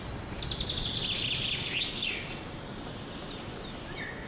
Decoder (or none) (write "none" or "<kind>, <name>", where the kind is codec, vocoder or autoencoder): none